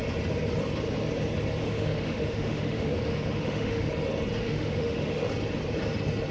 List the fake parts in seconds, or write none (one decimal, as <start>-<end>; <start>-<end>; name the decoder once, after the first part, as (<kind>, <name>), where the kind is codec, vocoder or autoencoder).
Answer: 1.6-3.9 (autoencoder, DAC-VAE); 4.4-5.3